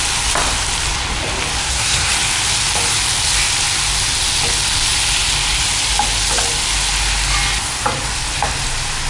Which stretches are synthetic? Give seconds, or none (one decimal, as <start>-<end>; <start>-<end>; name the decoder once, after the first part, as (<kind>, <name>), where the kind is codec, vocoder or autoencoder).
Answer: 1.6-2.1 (codec, SNAC)